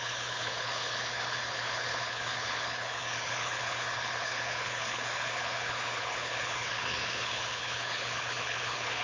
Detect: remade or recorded remade